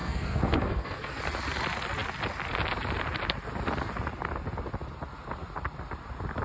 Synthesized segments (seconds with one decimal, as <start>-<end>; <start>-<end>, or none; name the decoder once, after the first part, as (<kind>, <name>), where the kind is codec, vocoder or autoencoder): 0.0-1.2 (codec, SNAC)

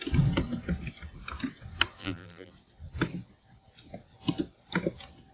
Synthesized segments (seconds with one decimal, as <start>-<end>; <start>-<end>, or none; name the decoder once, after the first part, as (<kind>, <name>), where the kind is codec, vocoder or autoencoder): 2.0-2.5 (vocoder, BigVGAN v2)

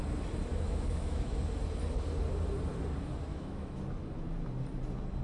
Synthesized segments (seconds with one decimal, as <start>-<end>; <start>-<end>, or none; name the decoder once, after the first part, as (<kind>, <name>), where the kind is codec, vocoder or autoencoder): 0.5-1.4 (autoencoder, DAC-VAE); 3.3-3.8

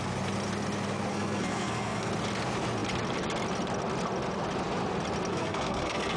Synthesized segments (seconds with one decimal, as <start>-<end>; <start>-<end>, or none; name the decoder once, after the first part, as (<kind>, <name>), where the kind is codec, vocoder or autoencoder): 1.1-2.1 (codec, SNAC); 5.3-6.2

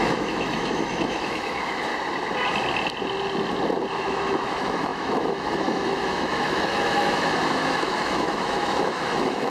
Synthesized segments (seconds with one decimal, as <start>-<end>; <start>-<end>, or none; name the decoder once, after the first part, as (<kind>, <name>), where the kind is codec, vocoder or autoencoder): 0.0-1.9 (autoencoder, DAC-VAE); 3.9-9.5

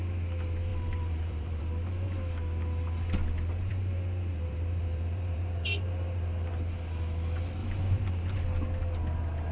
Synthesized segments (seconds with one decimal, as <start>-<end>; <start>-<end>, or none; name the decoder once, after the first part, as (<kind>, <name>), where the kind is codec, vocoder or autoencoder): 0.7-1.6 (vocoder, BigVGAN v2); 3.7-6.5; 7.6-8.4

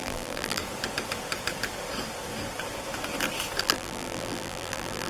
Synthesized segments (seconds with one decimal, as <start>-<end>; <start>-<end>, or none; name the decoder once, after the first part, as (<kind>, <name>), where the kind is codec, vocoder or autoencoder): 0.0-0.6 (vocoder, BigVGAN v2); 3.6-5.1